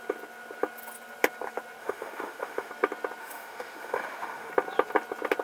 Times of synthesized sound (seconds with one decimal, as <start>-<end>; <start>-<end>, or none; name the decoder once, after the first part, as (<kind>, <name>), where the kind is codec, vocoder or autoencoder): 1.8-2.7 (autoencoder, DAC-VAE); 3.2-4.5